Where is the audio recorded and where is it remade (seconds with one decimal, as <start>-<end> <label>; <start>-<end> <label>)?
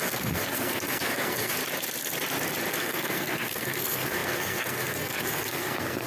0.0-1.6 remade; 1.6-2.7 recorded; 2.7-6.1 remade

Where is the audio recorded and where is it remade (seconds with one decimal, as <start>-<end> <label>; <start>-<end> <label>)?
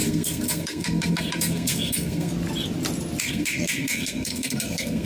0.0-2.3 remade; 2.3-3.2 recorded; 3.2-5.1 remade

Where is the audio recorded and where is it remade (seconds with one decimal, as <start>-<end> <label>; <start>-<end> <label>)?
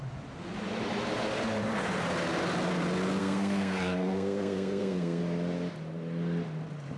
0.0-3.2 recorded; 3.2-5.2 remade; 5.2-7.0 recorded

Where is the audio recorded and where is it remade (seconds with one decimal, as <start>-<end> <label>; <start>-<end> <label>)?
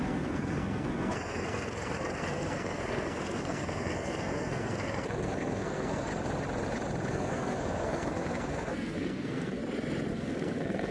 0.0-6.1 remade; 6.1-7.1 recorded; 7.1-9.6 remade; 9.6-10.1 recorded; 10.1-10.9 remade